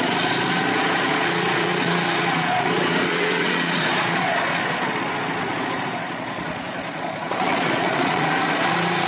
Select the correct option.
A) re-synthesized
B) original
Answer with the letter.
A